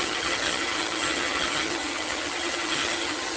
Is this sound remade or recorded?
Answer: remade